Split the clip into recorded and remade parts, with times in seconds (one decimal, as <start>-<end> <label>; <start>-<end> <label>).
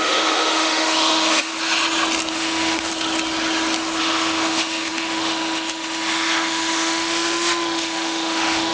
0.0-1.5 remade; 1.5-2.3 recorded; 2.3-2.9 remade; 2.9-4.0 recorded; 4.0-8.7 remade